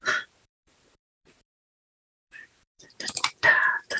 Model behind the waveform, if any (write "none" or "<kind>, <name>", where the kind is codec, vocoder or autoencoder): vocoder, BigVGAN v2